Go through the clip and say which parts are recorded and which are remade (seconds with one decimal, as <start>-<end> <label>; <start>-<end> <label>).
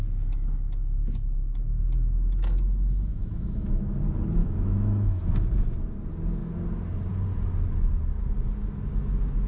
0.0-1.0 recorded; 1.0-1.8 remade; 1.8-3.1 recorded; 3.1-3.8 remade; 3.8-4.4 recorded; 4.4-5.2 remade; 5.2-9.5 recorded